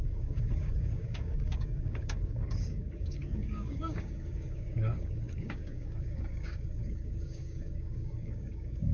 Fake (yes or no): yes